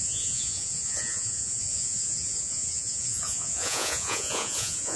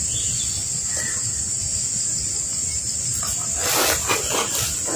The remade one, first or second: first